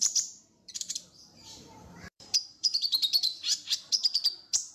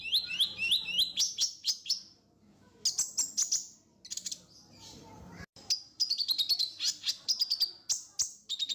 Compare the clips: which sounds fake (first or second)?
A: first